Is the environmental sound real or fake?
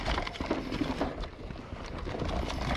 real